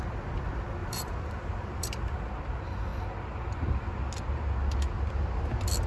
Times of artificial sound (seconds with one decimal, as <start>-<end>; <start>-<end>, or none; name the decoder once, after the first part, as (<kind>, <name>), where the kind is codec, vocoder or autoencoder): 0.8-2.3 (vocoder, BigVGAN v2)